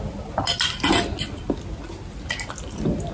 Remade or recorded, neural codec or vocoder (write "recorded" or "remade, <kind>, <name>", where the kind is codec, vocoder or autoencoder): recorded